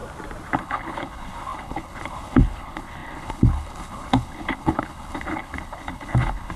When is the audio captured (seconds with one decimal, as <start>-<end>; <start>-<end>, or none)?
0.0-0.6